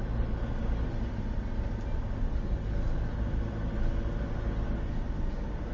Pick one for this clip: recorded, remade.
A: recorded